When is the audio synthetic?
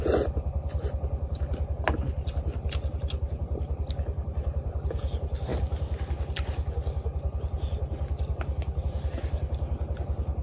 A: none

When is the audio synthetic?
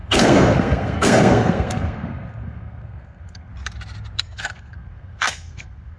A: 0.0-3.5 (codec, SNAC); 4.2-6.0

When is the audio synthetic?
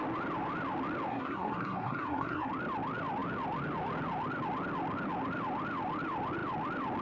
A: 1.1-2.5 (codec, SNAC)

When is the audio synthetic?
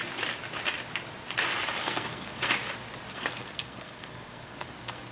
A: 1.8-2.5 (codec, SNAC); 3.1-5.1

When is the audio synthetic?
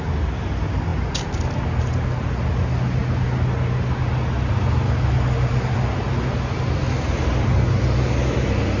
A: none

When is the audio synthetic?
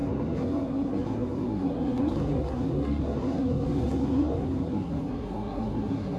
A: 0.0-6.2 (codec, SNAC)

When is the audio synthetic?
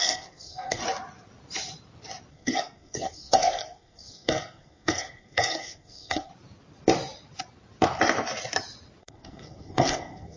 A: 0.0-0.8 (codec, SNAC); 2.3-6.3; 9.0-10.4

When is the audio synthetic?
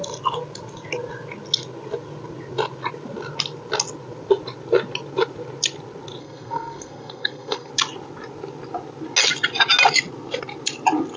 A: 6.2-7.7 (codec, SNAC)